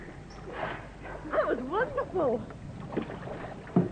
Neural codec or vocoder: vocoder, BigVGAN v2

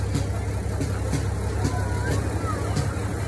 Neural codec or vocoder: none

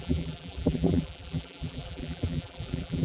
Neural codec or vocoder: vocoder, BigVGAN v2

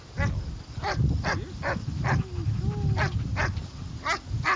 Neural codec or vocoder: none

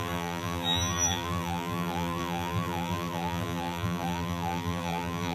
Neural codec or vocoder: vocoder, BigVGAN v2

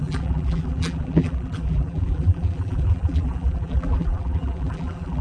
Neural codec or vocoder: vocoder, BigVGAN v2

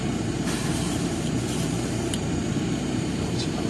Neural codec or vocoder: vocoder, BigVGAN v2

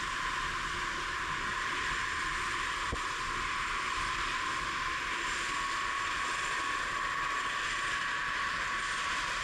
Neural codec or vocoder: vocoder, BigVGAN v2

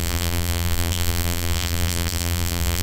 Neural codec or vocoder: vocoder, BigVGAN v2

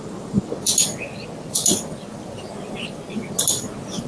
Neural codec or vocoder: none